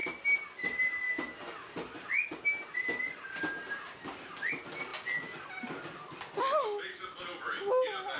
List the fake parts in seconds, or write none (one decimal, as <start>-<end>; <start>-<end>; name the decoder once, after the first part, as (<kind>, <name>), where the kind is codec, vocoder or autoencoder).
none